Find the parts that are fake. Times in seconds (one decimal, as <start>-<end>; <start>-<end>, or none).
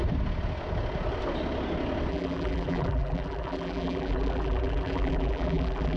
2.1-6.0